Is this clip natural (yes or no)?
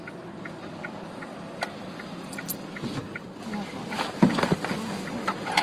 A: yes